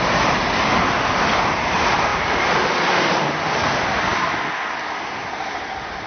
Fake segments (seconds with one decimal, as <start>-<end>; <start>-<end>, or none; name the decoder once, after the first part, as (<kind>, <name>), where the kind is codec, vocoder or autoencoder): none

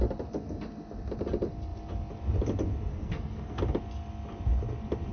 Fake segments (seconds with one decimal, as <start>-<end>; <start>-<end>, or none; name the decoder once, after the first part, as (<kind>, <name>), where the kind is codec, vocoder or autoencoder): 2.9-3.6 (codec, SNAC)

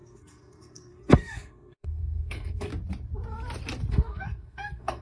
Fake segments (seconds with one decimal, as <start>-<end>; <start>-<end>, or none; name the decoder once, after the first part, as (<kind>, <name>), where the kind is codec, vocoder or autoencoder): 0.0-2.7 (codec, SNAC); 3.9-5.0